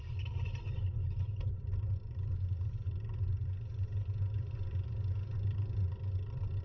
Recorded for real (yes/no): yes